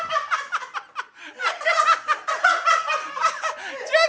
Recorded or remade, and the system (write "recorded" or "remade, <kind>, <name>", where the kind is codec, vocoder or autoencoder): recorded